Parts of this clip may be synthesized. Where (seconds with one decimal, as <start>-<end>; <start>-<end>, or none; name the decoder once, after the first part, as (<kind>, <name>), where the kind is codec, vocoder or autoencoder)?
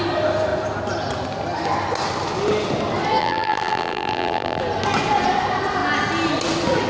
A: 3.2-4.6 (vocoder, BigVGAN v2)